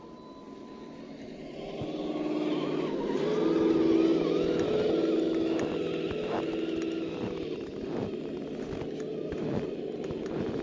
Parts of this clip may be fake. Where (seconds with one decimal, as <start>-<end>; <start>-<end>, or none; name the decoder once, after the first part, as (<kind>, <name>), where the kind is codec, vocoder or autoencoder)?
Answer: none

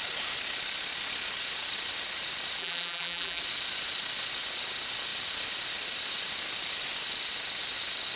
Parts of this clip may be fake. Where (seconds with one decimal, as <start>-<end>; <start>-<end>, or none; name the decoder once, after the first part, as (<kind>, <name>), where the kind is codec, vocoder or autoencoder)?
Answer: 2.6-3.4 (vocoder, BigVGAN v2)

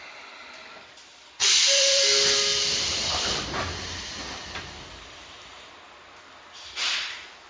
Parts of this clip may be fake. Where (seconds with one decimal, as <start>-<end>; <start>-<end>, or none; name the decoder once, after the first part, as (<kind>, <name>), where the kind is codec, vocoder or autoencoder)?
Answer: 1.4-2.9 (vocoder, BigVGAN v2)

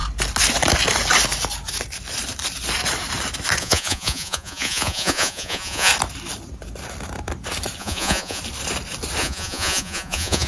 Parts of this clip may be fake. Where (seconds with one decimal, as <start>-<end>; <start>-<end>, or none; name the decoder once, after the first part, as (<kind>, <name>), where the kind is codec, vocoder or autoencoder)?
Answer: 3.6-5.9 (vocoder, Vocos); 7.8-8.4; 9.2-10.5

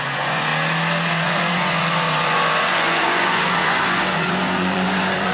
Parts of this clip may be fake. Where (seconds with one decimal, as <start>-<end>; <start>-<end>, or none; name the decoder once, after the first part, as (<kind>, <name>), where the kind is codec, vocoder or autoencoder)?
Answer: 0.0-0.5 (vocoder, Vocos); 1.1-5.3

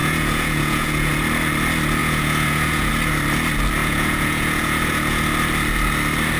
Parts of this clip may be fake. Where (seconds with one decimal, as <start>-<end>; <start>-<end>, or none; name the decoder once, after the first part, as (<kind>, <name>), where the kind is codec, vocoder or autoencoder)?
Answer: 0.0-1.1 (vocoder, Vocos); 2.0-2.9; 3.8-5.2

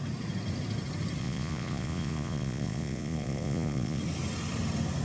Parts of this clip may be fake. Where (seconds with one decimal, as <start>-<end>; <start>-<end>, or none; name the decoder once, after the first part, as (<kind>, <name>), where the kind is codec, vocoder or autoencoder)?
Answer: 1.2-4.0 (vocoder, Vocos)